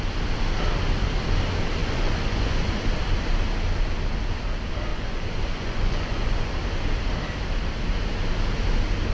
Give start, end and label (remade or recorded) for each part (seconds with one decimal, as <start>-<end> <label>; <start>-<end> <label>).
0.0-1.8 recorded; 1.8-2.8 remade; 2.8-4.9 recorded; 4.9-6.5 remade; 6.5-9.1 recorded